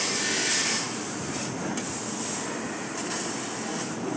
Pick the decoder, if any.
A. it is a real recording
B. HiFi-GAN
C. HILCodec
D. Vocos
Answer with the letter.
A